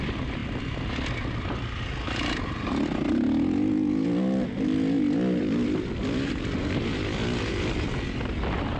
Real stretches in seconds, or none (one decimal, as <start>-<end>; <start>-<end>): 0.0-8.8